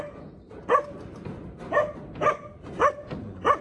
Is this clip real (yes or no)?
yes